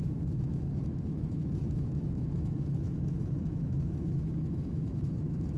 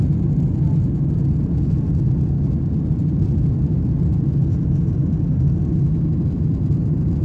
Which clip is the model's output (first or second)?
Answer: first